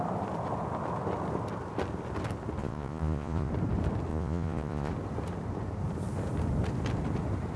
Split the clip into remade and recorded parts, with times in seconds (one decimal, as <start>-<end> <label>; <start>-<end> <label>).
0.0-2.6 recorded; 2.6-3.5 remade; 3.5-4.1 recorded; 4.1-4.9 remade; 4.9-7.6 recorded